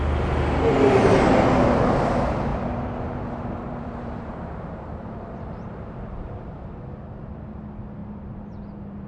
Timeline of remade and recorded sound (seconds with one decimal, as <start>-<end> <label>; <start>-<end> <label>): 0.0-2.5 recorded; 2.5-6.5 remade; 6.5-8.0 recorded; 8.0-8.6 remade; 8.6-9.1 recorded

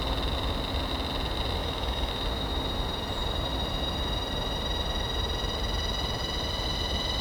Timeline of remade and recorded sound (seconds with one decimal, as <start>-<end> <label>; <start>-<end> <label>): 0.0-1.6 recorded; 1.6-2.1 remade; 2.1-7.2 recorded

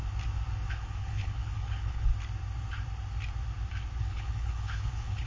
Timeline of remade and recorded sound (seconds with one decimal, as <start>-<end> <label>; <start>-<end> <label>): 0.0-0.7 recorded; 0.7-2.1 remade; 2.1-4.0 recorded; 4.0-5.3 remade